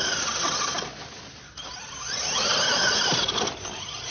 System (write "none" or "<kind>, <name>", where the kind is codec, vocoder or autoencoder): none